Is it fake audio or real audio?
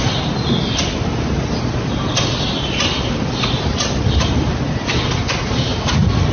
real